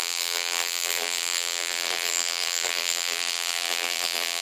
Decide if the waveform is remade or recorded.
remade